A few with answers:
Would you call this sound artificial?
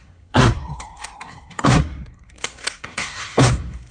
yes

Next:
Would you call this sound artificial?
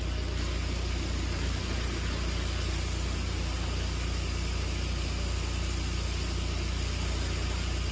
no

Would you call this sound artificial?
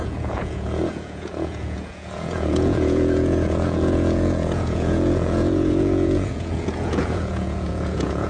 yes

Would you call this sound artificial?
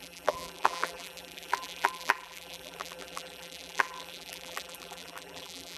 yes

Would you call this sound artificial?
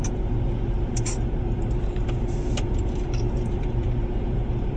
yes